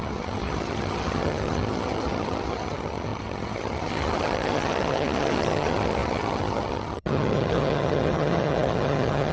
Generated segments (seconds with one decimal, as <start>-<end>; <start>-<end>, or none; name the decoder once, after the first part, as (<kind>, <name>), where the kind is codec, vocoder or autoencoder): 0.0-9.3 (vocoder, HiFi-GAN)